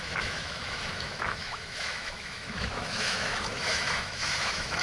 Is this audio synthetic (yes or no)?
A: yes